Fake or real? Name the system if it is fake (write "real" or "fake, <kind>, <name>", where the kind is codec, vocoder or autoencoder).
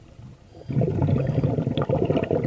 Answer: real